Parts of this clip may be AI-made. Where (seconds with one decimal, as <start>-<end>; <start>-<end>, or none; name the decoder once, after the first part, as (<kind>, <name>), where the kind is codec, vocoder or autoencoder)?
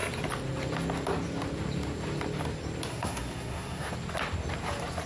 2.9-3.9 (codec, SNAC)